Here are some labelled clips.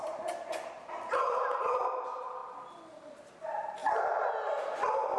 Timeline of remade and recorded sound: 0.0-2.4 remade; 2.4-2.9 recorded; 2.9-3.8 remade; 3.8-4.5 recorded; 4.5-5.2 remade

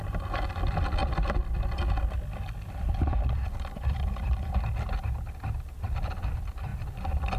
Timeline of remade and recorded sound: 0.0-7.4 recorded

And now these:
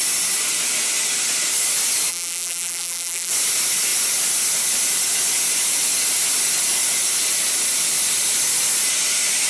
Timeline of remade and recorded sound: 0.0-2.1 recorded; 2.1-3.3 remade; 3.3-9.5 recorded

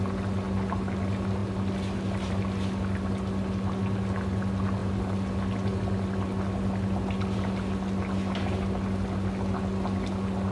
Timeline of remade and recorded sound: 0.0-10.5 recorded